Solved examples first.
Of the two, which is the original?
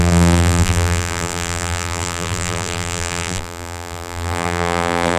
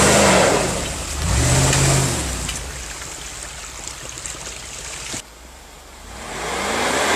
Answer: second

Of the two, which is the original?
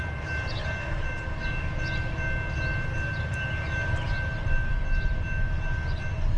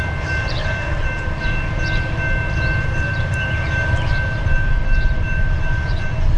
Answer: first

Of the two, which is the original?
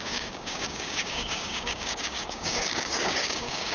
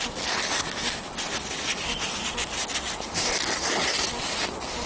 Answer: second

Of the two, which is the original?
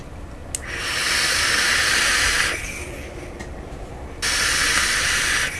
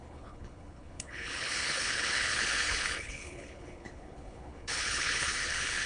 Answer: first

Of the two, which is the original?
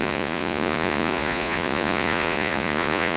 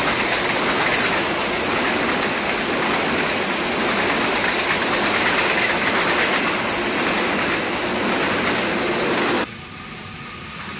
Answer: second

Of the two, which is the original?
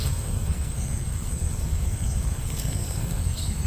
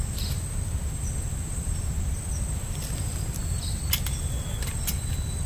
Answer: second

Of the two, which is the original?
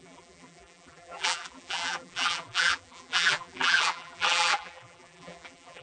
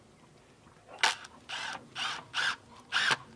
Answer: second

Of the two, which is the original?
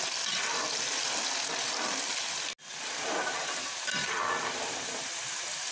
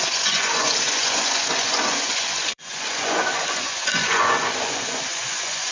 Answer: first